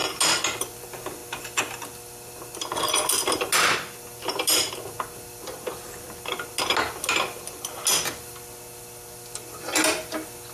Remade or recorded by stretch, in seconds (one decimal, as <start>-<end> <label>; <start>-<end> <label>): 0.0-10.5 recorded